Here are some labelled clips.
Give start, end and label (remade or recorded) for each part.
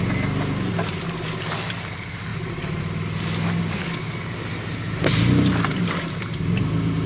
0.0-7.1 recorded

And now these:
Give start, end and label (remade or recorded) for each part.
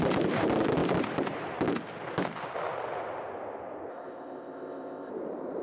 0.0-3.9 recorded; 3.9-5.1 remade; 5.1-5.6 recorded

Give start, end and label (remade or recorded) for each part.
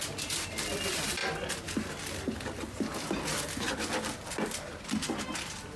0.0-5.8 recorded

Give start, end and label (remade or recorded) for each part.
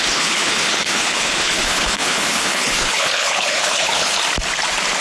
0.0-4.2 remade; 4.2-5.0 recorded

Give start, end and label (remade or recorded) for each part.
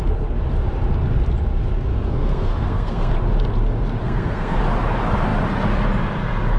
0.0-1.9 recorded; 1.9-3.1 remade; 3.1-4.0 recorded; 4.0-4.6 remade; 4.6-6.6 recorded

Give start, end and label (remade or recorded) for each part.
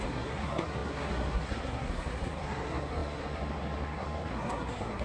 0.0-5.0 remade